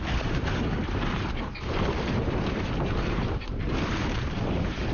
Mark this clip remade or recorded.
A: remade